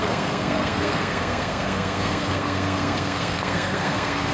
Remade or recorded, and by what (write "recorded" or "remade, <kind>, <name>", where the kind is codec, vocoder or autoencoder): remade, codec, SNAC